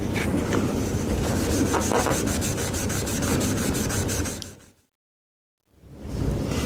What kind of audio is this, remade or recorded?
recorded